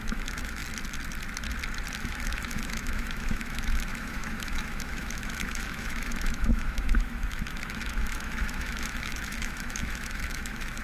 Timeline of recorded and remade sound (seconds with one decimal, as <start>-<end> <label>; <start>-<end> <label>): 0.0-0.6 remade; 0.6-2.0 recorded; 2.0-10.8 remade